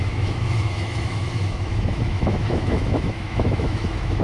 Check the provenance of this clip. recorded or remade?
remade